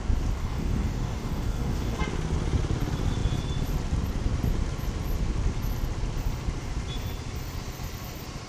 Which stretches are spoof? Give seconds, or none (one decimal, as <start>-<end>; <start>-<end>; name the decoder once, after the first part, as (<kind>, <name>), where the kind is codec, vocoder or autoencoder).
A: 0.4-2.0 (codec, DAC)